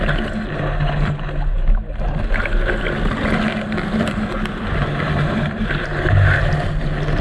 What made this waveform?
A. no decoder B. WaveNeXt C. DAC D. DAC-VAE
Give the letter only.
A